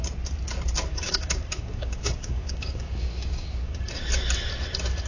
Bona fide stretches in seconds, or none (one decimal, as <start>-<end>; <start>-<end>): 0.0-0.9; 3.9-5.1